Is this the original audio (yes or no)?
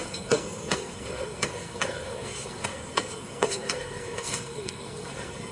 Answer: no